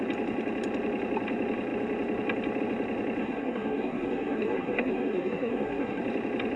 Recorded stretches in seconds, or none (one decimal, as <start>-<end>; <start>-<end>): 0.0-3.2; 6.0-6.6